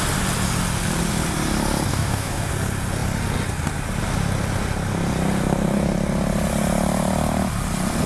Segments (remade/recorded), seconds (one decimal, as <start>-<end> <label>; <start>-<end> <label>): 0.0-1.9 recorded; 1.9-2.5 remade; 2.5-8.1 recorded

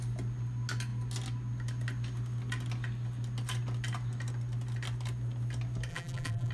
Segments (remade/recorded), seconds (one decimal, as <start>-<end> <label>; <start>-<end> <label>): 0.0-5.9 recorded; 5.9-6.5 remade

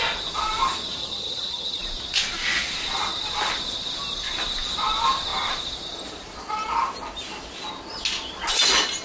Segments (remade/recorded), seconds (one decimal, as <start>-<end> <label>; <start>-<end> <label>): 0.0-1.0 recorded; 1.0-1.8 remade; 1.8-9.0 recorded

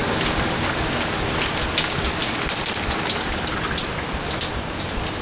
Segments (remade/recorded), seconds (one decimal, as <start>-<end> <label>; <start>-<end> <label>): 0.0-5.2 recorded

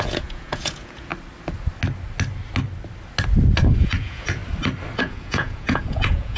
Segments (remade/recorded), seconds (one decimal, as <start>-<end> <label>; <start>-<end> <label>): 0.0-1.1 remade; 1.1-3.8 recorded; 3.8-4.4 remade; 4.4-5.0 recorded; 5.0-6.4 remade